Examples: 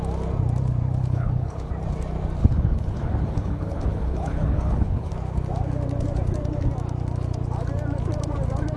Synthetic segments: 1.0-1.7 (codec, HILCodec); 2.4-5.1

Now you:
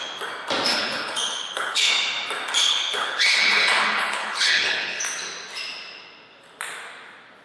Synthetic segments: 0.7-1.9 (codec, HILCodec); 2.6-5.0

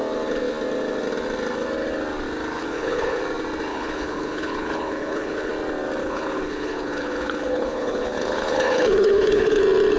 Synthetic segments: 2.6-3.2 (codec, HILCodec); 3.7-5.5; 6.0-9.6

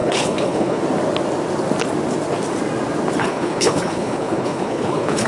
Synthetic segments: 0.0-0.8 (codec, HILCodec); 3.2-5.3

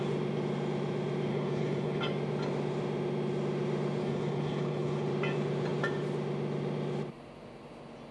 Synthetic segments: 1.3-2.0 (codec, HILCodec); 4.0-5.1

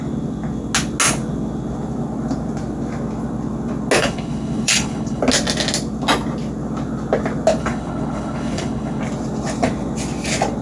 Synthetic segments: 4.0-5.2 (codec, HILCodec); 7.6-9.0

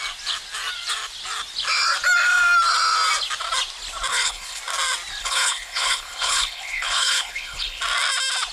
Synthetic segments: 4.1-4.6 (codec, HILCodec); 5.2-7.8